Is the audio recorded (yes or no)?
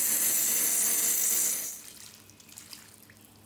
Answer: yes